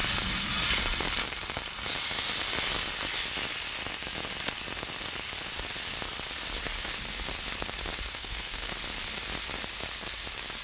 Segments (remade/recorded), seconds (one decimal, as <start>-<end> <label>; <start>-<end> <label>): 0.0-8.1 recorded; 8.1-8.7 remade; 8.7-10.6 recorded